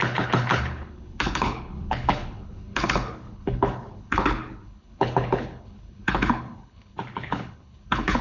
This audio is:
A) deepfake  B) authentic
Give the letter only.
A